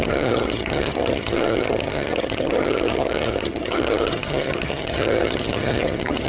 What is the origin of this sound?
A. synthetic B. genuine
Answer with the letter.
A